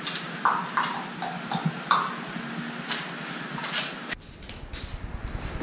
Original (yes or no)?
yes